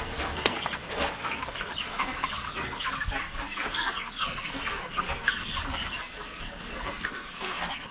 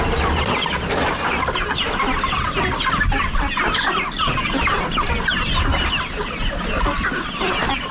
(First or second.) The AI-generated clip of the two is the first